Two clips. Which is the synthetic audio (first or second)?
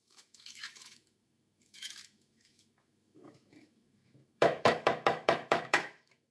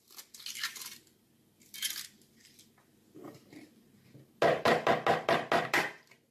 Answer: first